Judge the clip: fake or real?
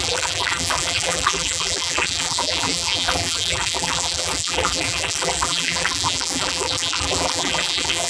fake